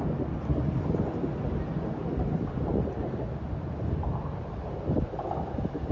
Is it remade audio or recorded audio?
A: recorded